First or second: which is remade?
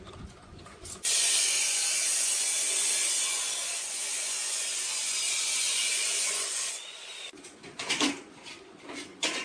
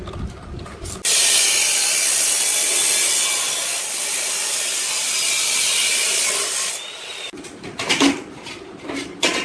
first